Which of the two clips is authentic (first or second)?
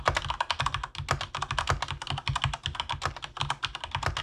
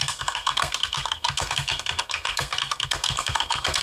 first